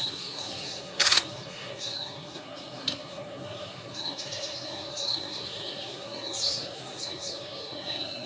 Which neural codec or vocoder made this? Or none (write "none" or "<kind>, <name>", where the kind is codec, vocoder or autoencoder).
codec, SNAC